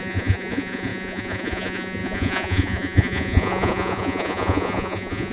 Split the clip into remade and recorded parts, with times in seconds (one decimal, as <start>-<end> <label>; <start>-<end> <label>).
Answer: 0.0-5.3 remade